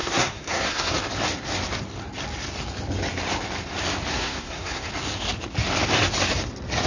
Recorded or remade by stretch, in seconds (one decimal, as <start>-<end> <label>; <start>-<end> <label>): 0.0-0.9 remade; 0.9-4.1 recorded; 4.1-4.9 remade; 4.9-6.9 recorded